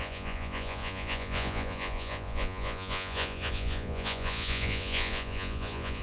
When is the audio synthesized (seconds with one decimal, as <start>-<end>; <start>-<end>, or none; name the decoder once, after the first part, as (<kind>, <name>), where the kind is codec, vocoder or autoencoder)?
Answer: 0.0-6.0 (vocoder, Vocos)